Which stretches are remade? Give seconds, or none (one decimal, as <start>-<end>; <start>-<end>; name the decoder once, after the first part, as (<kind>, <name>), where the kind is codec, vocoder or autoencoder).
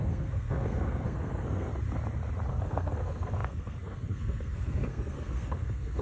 0.0-1.7 (codec, SNAC); 2.5-6.0